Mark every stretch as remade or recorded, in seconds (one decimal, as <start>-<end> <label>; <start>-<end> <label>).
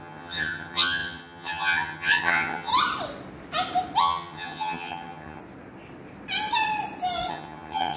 0.0-2.7 remade; 2.7-4.0 recorded; 4.0-5.4 remade; 5.4-7.3 recorded; 7.3-8.0 remade